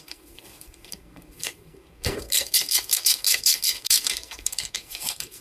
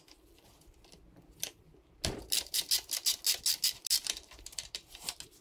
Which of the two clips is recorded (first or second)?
second